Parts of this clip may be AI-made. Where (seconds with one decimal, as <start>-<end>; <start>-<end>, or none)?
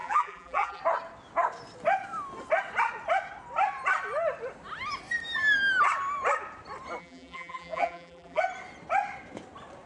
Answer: 0.0-0.8; 7.0-8.4